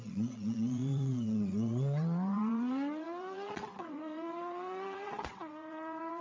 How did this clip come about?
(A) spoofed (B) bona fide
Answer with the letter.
A